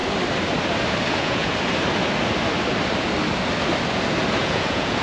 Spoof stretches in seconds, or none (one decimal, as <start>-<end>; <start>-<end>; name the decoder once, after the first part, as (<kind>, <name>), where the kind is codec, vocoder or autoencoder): 1.1-1.5 (vocoder, Vocos); 4.4-5.0